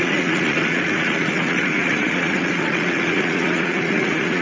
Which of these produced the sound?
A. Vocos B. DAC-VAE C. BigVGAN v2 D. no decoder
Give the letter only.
A